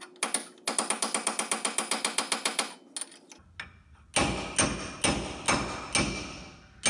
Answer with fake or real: real